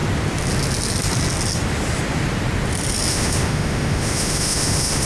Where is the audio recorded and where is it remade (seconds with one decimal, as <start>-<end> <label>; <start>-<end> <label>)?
0.0-3.1 recorded; 3.1-5.1 remade